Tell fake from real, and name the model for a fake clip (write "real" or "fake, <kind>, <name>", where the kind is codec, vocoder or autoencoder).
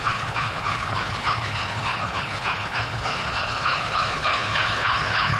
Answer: fake, codec, HILCodec